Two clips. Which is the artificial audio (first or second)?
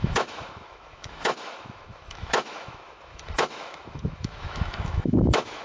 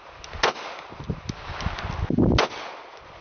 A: first